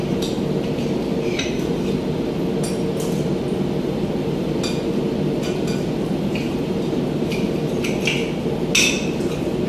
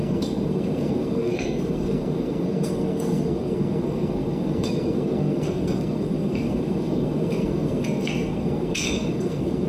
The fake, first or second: second